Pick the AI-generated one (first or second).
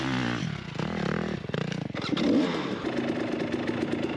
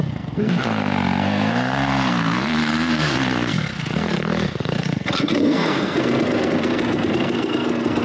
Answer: second